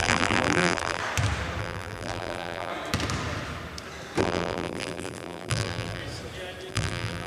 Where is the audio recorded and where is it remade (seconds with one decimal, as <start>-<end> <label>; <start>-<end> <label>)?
0.0-1.0 remade; 1.0-1.6 recorded; 1.6-2.7 remade; 2.7-4.2 recorded; 4.2-6.0 remade; 6.0-6.7 recorded; 6.7-7.3 remade